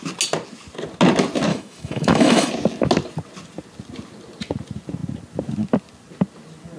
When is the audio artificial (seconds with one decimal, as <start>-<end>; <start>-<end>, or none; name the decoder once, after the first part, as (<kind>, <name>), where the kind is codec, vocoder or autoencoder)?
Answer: 1.5-2.5 (autoencoder, DAC-VAE)